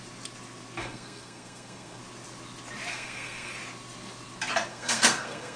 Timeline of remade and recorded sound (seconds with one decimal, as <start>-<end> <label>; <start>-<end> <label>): 0.0-0.8 recorded; 0.8-2.0 remade; 2.0-2.9 recorded; 2.9-3.5 remade; 3.5-4.7 recorded; 4.7-5.6 remade